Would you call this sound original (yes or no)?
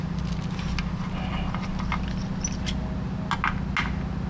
yes